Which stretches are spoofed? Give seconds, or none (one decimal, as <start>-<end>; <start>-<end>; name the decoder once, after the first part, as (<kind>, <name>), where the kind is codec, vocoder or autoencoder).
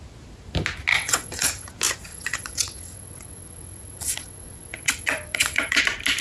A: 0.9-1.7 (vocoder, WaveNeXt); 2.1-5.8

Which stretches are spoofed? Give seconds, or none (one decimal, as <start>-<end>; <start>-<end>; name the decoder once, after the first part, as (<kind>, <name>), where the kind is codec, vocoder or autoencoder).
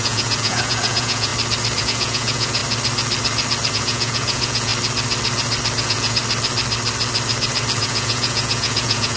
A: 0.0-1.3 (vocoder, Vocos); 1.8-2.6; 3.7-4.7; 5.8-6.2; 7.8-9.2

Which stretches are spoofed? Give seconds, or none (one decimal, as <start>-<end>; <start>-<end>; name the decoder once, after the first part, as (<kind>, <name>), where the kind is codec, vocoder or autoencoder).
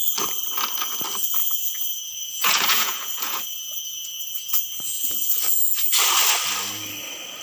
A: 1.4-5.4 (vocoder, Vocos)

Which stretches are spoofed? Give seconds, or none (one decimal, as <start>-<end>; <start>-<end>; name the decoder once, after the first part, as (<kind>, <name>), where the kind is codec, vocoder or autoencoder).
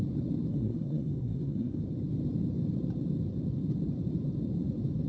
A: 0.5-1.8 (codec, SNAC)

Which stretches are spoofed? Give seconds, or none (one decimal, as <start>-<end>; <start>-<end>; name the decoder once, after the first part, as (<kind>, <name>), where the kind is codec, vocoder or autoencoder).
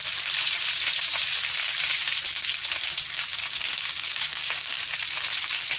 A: 3.4-4.8 (codec, DAC)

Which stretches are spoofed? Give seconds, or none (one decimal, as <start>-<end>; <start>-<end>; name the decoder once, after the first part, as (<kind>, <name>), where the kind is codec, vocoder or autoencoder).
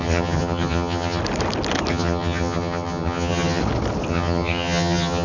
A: 0.0-1.2 (vocoder, HiFi-GAN); 1.9-3.6; 4.1-5.2